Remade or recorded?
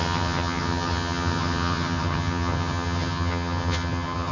remade